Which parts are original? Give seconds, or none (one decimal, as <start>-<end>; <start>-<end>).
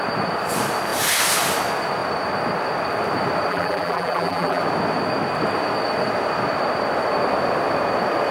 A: 0.0-3.5; 4.6-8.3